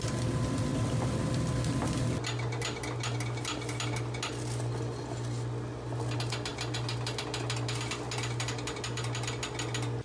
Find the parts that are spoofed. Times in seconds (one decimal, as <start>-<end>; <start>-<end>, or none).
0.7-2.0